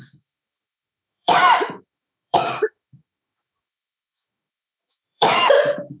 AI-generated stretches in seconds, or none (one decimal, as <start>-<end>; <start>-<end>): 0.0-6.0